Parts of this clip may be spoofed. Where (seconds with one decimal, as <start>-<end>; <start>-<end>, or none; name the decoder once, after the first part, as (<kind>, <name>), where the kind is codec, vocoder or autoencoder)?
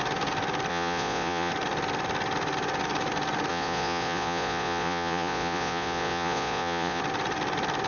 0.7-1.5 (vocoder, Vocos); 3.5-7.0